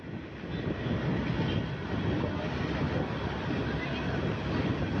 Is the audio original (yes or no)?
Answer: yes